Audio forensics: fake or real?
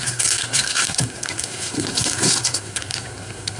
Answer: fake